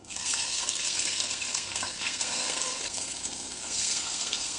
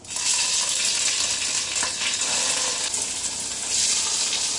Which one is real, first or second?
second